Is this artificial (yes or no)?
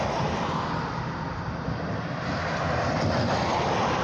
no